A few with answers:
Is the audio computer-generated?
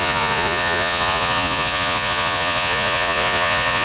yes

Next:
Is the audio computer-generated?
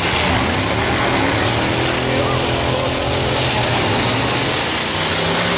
no